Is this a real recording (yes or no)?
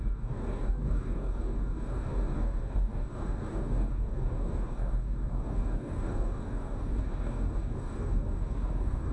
no